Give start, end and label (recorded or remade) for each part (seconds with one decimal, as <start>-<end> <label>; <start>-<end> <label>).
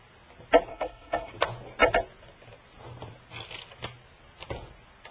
0.0-0.7 recorded; 0.7-1.3 remade; 1.3-5.1 recorded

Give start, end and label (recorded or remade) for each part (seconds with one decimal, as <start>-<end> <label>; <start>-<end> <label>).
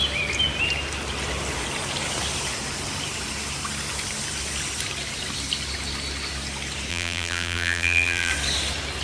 0.0-6.9 recorded; 6.9-8.3 remade; 8.3-9.0 recorded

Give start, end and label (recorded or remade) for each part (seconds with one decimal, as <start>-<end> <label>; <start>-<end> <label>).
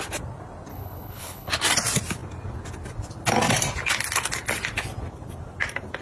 0.0-0.7 recorded; 0.7-1.5 remade; 1.5-6.0 recorded